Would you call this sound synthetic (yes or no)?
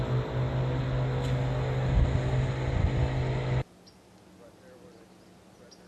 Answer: no